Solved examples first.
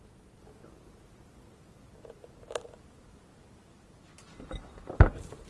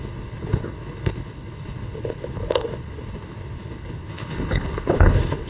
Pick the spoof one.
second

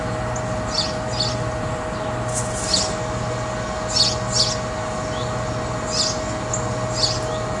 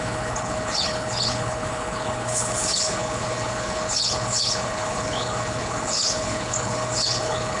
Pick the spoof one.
second